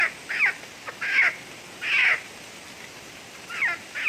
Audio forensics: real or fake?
real